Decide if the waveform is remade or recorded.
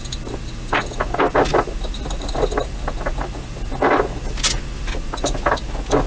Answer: recorded